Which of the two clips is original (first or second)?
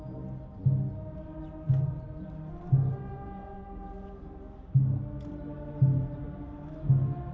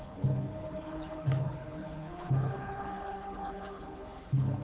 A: first